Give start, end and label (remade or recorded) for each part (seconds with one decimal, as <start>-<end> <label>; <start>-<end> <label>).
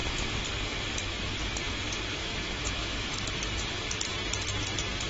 0.0-1.0 recorded; 1.0-1.6 remade; 1.6-2.2 recorded; 2.2-3.8 remade; 3.8-5.1 recorded